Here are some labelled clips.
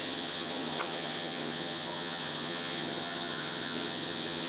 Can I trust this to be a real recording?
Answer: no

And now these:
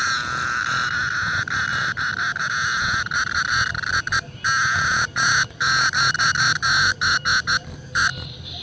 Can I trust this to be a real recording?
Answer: yes